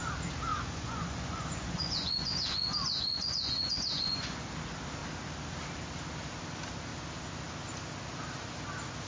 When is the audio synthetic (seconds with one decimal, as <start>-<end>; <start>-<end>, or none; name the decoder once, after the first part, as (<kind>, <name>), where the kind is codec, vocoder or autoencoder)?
0.5-4.5 (vocoder, Vocos)